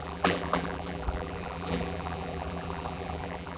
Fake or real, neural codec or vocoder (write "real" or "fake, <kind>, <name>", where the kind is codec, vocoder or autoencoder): fake, vocoder, BigVGAN v2